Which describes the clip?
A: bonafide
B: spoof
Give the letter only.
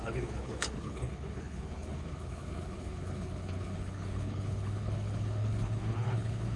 B